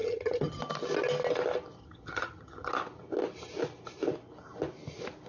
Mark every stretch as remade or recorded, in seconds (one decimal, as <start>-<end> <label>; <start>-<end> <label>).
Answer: 0.0-0.6 remade; 0.6-1.8 recorded; 1.8-2.7 remade; 2.7-5.3 recorded

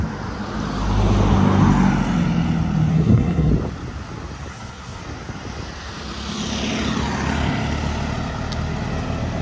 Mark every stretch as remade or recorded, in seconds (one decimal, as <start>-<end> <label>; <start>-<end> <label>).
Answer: 0.0-2.9 recorded; 2.9-3.5 remade; 3.5-4.5 recorded; 4.5-5.0 remade; 5.0-9.4 recorded

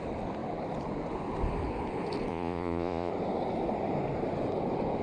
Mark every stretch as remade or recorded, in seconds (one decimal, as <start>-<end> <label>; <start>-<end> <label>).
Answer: 0.0-2.3 recorded; 2.3-3.1 remade; 3.1-5.0 recorded

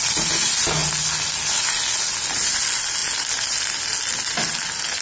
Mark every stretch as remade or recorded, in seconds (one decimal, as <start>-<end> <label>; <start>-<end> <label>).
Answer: 0.0-5.0 recorded

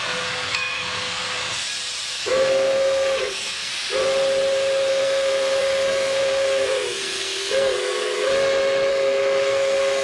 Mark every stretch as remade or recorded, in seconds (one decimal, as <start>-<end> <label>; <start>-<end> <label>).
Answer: 0.0-1.6 remade; 1.6-2.1 recorded; 2.1-3.7 remade; 3.7-4.9 recorded; 4.9-8.3 remade; 8.3-8.9 recorded; 8.9-10.0 remade

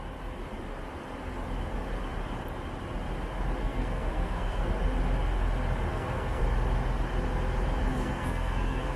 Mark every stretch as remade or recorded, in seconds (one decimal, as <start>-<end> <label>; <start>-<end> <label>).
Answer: 0.0-3.6 recorded; 3.6-4.7 remade; 4.7-5.9 recorded; 5.9-6.4 remade; 6.4-7.9 recorded; 7.9-9.0 remade